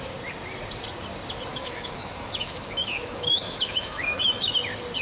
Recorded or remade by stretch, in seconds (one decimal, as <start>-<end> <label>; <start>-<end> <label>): 0.0-1.5 recorded; 1.5-4.5 remade; 4.5-5.0 recorded